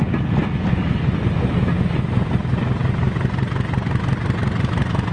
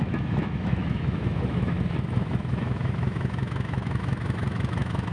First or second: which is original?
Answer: first